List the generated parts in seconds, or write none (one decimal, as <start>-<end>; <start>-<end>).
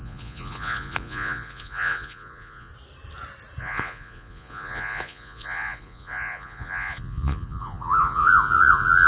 0.0-2.7; 3.6-9.1